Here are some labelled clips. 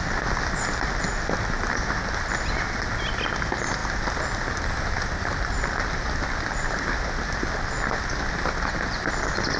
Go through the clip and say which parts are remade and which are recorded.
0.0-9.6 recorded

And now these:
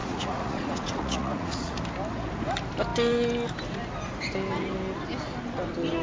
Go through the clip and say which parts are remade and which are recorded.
0.0-1.8 remade; 1.8-6.0 recorded

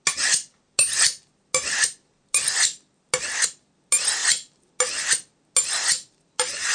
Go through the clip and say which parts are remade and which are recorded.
0.0-6.7 recorded

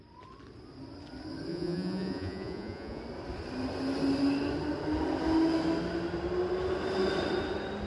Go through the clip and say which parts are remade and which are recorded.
0.0-1.5 recorded; 1.5-3.0 remade; 3.0-7.9 recorded